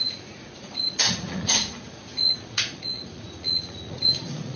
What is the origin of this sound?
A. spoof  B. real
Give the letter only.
A